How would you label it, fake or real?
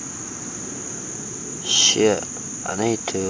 real